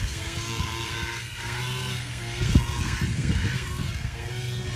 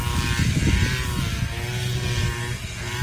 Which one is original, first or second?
second